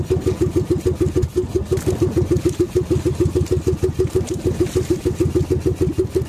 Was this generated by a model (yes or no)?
no